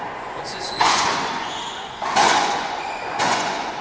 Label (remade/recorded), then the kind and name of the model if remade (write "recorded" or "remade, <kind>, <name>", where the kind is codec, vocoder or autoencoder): remade, vocoder, Vocos